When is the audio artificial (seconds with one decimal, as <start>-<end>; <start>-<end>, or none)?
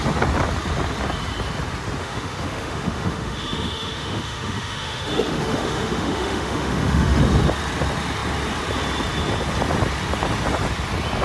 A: 2.0-7.2